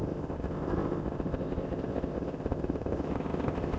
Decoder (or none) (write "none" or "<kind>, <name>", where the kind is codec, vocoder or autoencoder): codec, ZipCodec